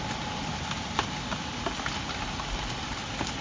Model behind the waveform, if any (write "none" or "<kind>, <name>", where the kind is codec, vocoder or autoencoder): none